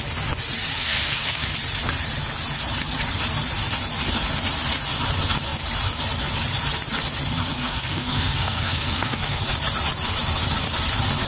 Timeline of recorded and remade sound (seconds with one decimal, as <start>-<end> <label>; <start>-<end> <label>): 0.0-0.7 recorded; 0.7-1.5 remade; 1.5-7.5 recorded; 7.5-9.4 remade; 9.4-11.3 recorded